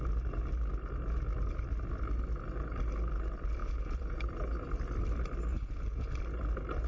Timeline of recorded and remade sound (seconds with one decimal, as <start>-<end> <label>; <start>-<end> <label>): 0.0-3.6 recorded; 3.6-4.2 remade; 4.2-5.5 recorded; 5.5-6.1 remade; 6.1-6.9 recorded